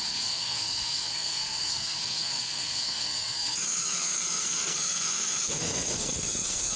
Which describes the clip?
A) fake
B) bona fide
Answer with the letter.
A